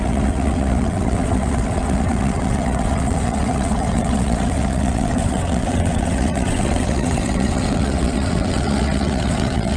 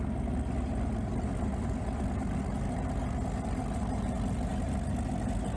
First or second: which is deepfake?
first